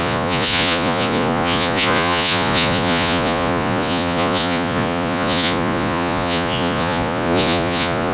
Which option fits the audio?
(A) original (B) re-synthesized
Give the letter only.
B